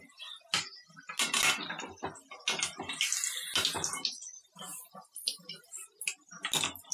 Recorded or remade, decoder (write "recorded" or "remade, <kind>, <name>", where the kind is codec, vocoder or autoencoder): recorded